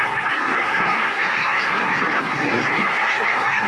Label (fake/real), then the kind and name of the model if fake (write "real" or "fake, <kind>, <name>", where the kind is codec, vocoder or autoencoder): fake, codec, SNAC